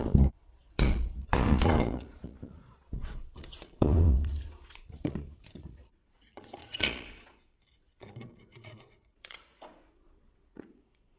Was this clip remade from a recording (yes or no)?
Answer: yes